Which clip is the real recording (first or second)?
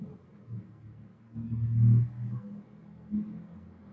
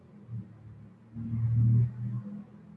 second